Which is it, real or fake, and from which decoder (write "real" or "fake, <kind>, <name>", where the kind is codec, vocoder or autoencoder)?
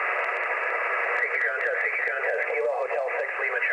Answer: real